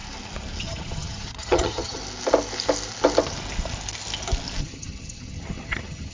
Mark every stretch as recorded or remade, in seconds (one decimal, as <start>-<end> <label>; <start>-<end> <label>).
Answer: 0.0-0.6 recorded; 0.6-2.0 remade; 2.0-4.6 recorded; 4.6-6.1 remade